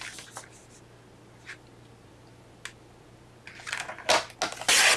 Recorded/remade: recorded